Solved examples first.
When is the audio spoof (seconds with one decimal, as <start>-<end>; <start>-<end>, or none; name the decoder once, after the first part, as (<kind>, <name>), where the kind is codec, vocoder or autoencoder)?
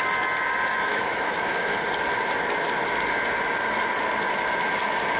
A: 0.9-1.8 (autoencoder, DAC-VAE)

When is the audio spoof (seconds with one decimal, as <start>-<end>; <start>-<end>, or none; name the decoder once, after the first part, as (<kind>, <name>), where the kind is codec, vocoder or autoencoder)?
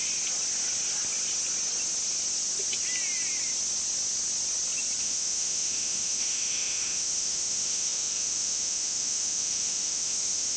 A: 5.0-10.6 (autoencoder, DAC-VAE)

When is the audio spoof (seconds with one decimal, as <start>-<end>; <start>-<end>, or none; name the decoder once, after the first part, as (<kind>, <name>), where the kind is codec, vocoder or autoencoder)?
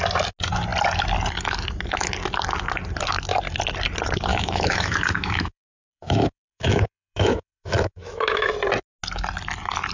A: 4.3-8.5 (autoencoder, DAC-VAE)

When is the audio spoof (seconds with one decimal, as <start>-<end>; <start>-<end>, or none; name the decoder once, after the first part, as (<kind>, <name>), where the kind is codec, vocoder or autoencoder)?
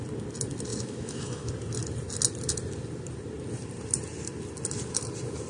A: 0.7-1.5 (autoencoder, DAC-VAE)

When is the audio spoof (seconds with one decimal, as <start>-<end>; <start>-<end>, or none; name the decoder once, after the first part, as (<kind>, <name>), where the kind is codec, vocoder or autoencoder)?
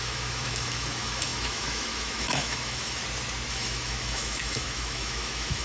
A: 0.0-3.0 (autoencoder, DAC-VAE); 3.5-5.6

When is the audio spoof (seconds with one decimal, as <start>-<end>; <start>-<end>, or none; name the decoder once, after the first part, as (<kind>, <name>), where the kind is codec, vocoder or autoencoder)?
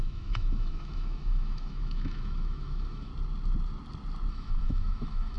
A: 0.0-3.1 (autoencoder, DAC-VAE); 4.3-5.4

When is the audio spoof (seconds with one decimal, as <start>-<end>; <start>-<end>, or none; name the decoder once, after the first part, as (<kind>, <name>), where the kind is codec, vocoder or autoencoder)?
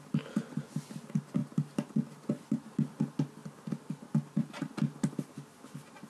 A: none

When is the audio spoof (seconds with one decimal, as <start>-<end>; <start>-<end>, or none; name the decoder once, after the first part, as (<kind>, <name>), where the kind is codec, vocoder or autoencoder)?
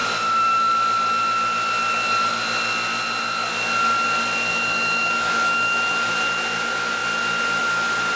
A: 4.5-6.1 (autoencoder, DAC-VAE)